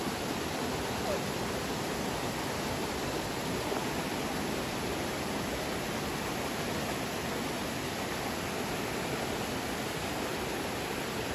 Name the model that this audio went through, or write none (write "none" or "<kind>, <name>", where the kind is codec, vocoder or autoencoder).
none